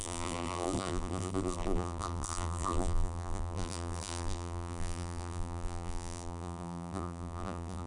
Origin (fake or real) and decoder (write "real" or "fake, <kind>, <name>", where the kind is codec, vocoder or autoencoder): fake, vocoder, BigVGAN v2